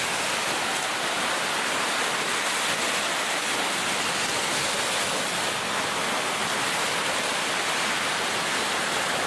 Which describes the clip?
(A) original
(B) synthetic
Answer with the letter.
A